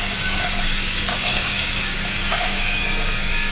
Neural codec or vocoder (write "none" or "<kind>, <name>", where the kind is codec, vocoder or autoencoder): codec, DAC